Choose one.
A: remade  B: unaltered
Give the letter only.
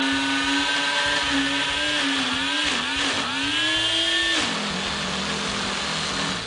B